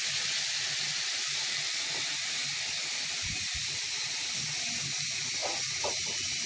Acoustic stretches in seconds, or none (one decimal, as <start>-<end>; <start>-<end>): 0.0-6.5